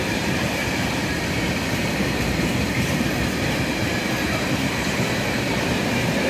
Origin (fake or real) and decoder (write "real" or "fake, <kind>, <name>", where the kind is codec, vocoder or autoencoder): fake, vocoder, BigVGAN v2